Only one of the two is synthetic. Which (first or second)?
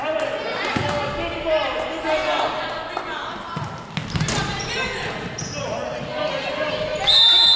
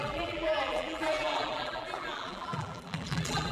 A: second